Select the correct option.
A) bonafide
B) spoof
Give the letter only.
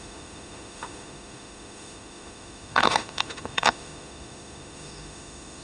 B